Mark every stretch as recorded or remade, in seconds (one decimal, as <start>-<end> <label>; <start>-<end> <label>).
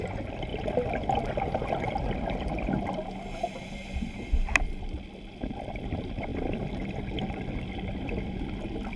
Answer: 0.0-0.5 remade; 0.5-1.8 recorded; 1.8-6.3 remade; 6.3-7.6 recorded; 7.6-9.0 remade